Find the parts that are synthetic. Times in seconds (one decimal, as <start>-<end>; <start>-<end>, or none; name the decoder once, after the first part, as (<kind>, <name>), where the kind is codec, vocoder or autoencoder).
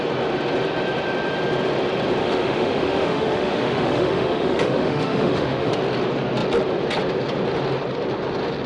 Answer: 2.2-5.8 (autoencoder, DAC-VAE)